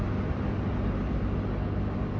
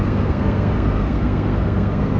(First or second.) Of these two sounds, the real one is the first